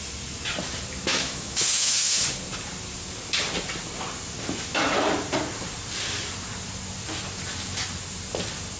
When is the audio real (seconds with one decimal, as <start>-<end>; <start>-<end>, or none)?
0.0-1.1; 2.2-8.8